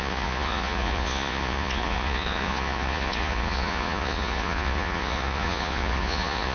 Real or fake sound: fake